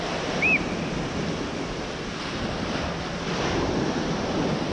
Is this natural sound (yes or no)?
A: yes